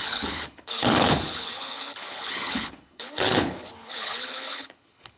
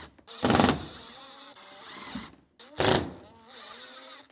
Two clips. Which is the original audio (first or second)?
second